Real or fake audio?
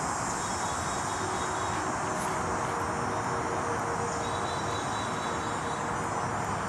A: real